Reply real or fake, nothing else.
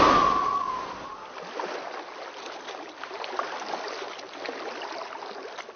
real